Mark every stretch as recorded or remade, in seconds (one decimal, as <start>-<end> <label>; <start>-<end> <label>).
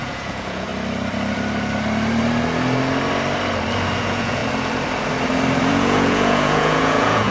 0.0-0.7 remade; 0.7-4.0 recorded; 4.0-4.4 remade; 4.4-5.7 recorded; 5.7-7.3 remade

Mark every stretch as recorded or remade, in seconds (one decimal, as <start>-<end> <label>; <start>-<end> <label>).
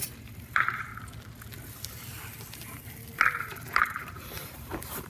0.0-0.9 remade; 0.9-3.4 recorded; 3.4-5.1 remade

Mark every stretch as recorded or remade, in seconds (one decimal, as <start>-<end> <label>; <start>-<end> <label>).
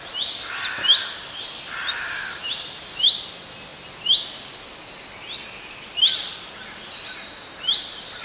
0.0-8.2 recorded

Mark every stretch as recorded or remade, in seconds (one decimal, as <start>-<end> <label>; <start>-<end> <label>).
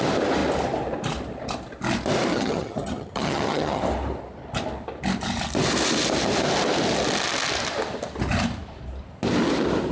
0.0-2.3 recorded; 2.3-3.8 remade; 3.8-9.9 recorded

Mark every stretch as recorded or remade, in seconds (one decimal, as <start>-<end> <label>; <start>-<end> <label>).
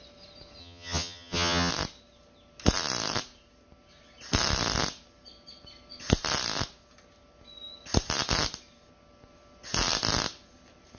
0.0-0.6 recorded; 0.6-1.7 remade; 1.7-11.0 recorded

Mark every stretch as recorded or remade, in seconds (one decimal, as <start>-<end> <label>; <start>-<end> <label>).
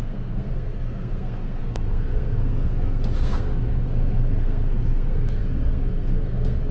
0.0-6.7 remade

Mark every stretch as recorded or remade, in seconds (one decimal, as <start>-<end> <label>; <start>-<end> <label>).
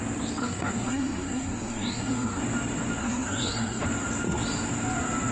0.0-0.4 recorded; 0.4-2.4 remade; 2.4-3.0 recorded; 3.0-3.8 remade; 3.8-5.3 recorded